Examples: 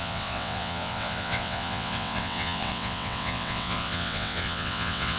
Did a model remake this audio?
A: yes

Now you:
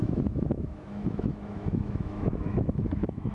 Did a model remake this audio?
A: yes